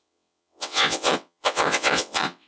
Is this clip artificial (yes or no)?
yes